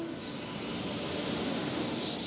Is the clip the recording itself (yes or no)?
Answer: yes